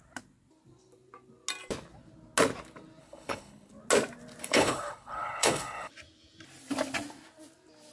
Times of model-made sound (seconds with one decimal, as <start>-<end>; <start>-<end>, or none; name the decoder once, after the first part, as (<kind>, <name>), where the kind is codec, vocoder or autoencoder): 3.0-3.7 (codec, HILCodec); 4.4-5.9